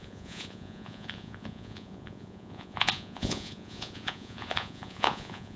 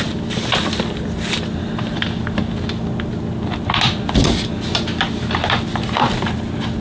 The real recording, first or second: second